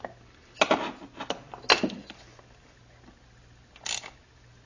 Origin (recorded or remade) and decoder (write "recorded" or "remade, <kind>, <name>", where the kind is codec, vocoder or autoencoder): recorded